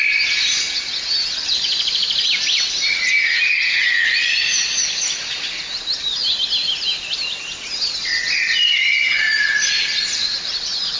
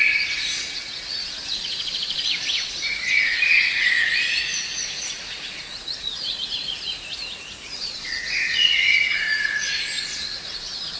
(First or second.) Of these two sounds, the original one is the first